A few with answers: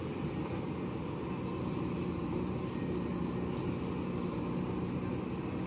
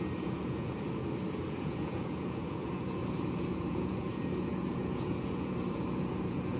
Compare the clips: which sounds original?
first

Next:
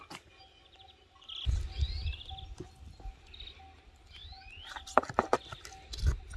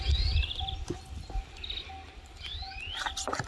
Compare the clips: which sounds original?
first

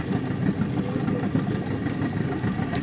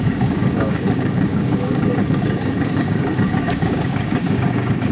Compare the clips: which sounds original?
first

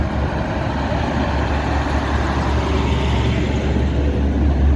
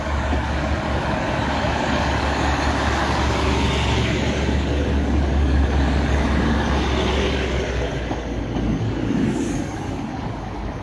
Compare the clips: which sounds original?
first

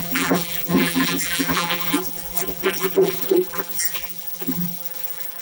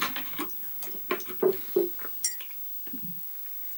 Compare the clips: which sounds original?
second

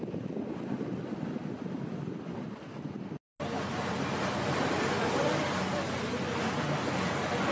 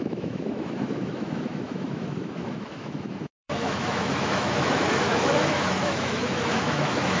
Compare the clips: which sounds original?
first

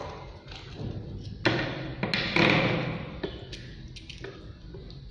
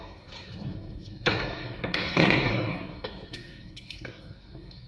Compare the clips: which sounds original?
first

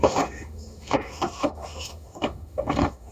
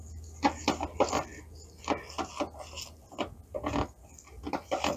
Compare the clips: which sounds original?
second